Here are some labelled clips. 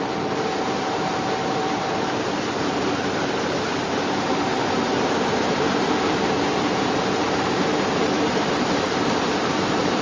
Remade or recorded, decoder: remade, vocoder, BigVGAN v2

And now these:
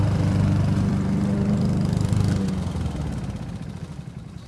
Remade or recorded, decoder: remade, vocoder, BigVGAN v2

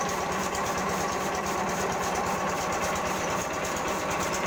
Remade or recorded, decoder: recorded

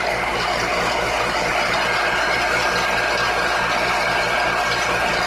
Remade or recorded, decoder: recorded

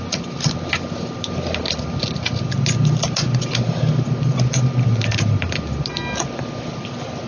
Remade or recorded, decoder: recorded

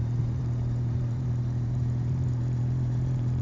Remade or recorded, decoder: remade, vocoder, BigVGAN v2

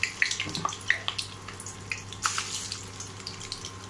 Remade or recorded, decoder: recorded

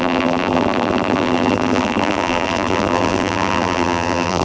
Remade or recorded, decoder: remade, vocoder, BigVGAN v2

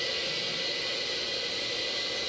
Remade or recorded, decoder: recorded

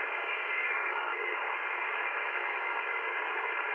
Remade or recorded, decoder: remade, codec, DAC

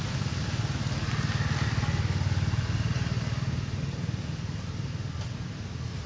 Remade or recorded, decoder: recorded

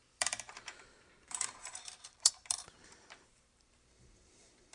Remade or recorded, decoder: remade, vocoder, BigVGAN v2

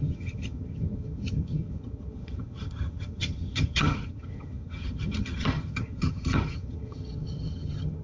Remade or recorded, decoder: remade, vocoder, HiFi-GAN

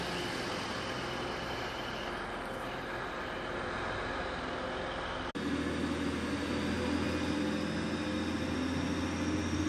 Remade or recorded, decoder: recorded